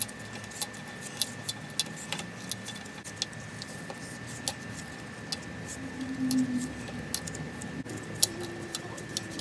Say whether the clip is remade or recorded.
recorded